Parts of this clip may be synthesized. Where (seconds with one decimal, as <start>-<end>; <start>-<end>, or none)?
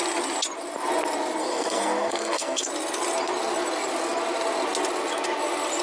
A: 1.4-2.7